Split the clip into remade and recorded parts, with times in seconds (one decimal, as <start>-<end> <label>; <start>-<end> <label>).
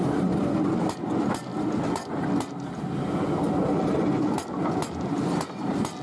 0.0-6.0 recorded